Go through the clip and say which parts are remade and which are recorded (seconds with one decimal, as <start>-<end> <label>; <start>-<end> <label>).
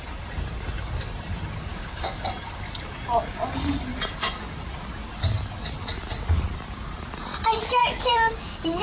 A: 0.0-1.7 recorded; 1.7-2.2 remade; 2.2-7.8 recorded; 7.8-8.8 remade